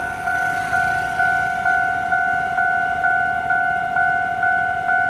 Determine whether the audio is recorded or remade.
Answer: recorded